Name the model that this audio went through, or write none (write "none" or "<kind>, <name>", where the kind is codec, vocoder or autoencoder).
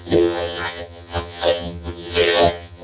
vocoder, HiFi-GAN